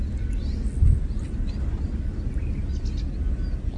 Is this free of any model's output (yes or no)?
yes